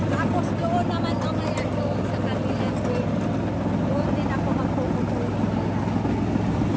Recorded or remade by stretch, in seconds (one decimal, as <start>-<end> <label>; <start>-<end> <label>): 0.0-6.8 recorded